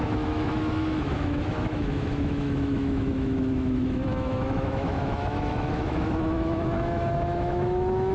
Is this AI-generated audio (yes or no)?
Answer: yes